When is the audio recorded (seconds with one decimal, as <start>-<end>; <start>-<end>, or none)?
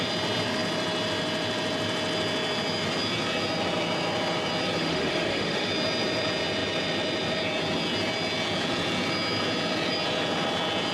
0.0-4.8; 5.7-10.9